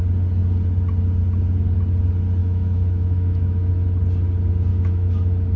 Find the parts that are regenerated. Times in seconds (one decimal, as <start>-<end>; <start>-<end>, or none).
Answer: 2.4-3.7; 4.7-5.6